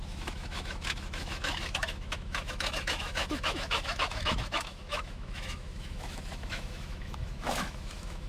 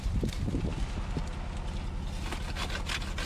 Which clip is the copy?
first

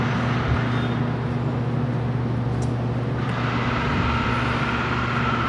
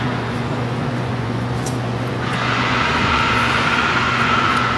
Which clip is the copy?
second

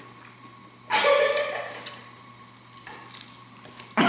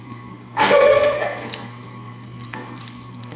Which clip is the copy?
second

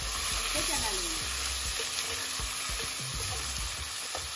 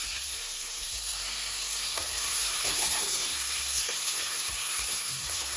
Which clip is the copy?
second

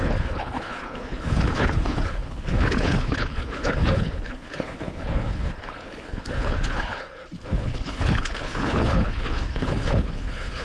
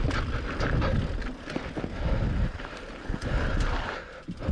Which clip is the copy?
first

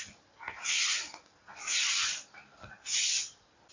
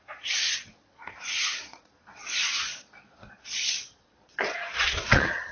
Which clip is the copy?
second